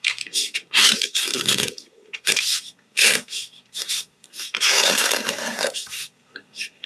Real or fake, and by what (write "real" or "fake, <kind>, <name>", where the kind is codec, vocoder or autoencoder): fake, codec, SNAC